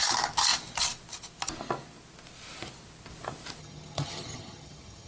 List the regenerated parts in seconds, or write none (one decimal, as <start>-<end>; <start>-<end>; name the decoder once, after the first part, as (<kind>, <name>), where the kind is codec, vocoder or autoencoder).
3.6-5.1 (vocoder, HiFi-GAN)